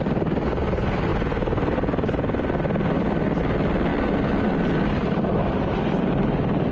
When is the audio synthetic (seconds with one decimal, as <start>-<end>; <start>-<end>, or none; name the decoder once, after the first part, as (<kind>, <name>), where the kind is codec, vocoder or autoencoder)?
none